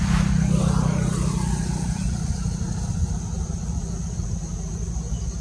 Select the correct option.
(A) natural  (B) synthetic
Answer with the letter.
A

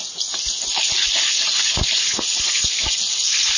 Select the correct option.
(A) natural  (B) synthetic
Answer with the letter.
A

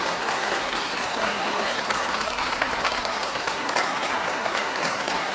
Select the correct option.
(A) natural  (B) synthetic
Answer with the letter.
B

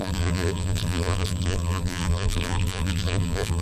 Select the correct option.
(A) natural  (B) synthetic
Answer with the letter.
B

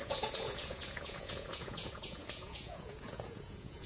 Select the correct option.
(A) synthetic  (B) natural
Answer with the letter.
A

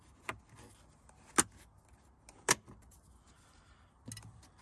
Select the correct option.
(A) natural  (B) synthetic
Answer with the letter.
A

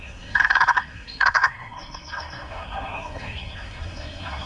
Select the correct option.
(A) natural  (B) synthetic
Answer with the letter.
B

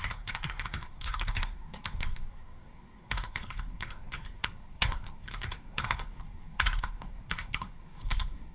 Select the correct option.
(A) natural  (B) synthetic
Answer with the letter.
B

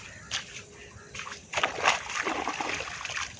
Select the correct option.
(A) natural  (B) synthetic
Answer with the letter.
A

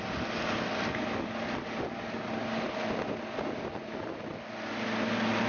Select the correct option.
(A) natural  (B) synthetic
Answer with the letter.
A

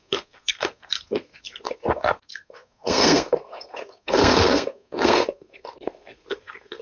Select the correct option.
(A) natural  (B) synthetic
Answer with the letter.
B